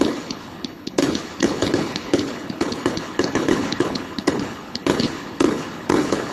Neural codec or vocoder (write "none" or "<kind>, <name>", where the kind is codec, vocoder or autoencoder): codec, HILCodec